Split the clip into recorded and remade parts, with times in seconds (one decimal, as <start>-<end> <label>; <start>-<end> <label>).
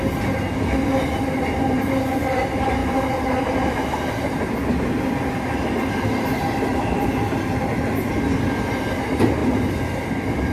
0.0-2.8 recorded; 2.8-3.3 remade; 3.3-6.7 recorded; 6.7-7.3 remade; 7.3-10.5 recorded